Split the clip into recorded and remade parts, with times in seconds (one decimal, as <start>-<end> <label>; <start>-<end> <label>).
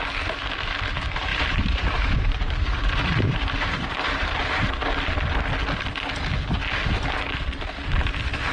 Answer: 0.0-1.3 recorded; 1.3-4.8 remade; 4.8-8.5 recorded